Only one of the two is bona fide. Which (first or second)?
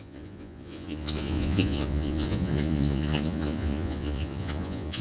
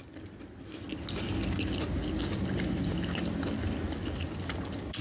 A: second